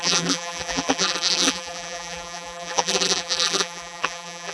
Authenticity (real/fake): fake